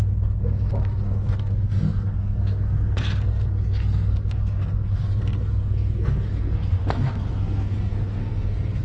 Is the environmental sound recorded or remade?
remade